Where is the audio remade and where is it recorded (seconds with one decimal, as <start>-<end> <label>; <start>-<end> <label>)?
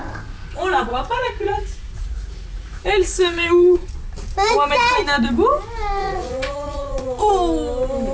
0.0-0.9 recorded; 0.9-3.9 remade; 3.9-6.0 recorded; 6.0-7.3 remade; 7.3-8.1 recorded